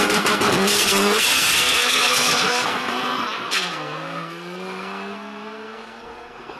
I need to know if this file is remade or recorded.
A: remade